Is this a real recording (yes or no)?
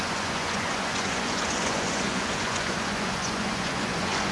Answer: no